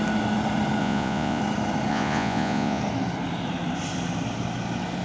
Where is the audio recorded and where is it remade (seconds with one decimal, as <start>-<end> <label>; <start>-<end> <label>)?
0.0-0.8 recorded; 0.8-1.4 remade; 1.4-1.9 recorded; 1.9-2.8 remade; 2.8-5.0 recorded